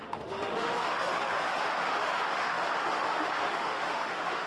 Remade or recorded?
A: remade